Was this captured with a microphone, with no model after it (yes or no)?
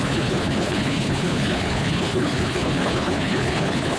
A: no